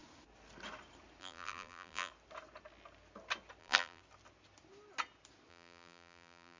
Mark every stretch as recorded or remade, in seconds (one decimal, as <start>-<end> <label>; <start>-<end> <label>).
0.0-1.2 recorded; 1.2-2.1 remade; 2.1-3.6 recorded; 3.6-4.0 remade; 4.0-5.5 recorded; 5.5-6.6 remade